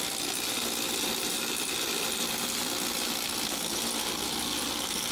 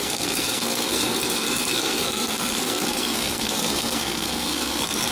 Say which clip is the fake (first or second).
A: second